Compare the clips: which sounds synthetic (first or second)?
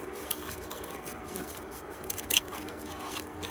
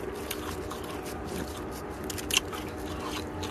first